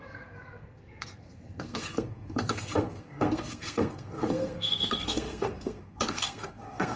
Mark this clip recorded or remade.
remade